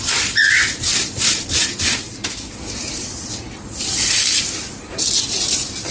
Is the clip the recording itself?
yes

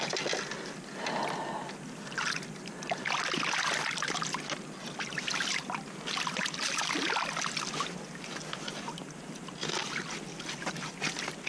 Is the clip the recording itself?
yes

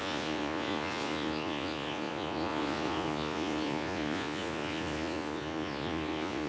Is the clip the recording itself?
no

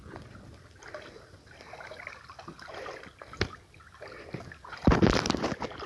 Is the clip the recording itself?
yes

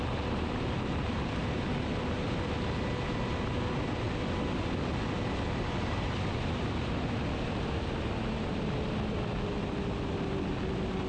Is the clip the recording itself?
yes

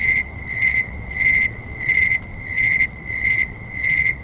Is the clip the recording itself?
no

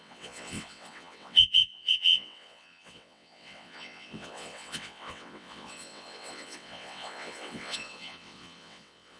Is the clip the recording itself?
no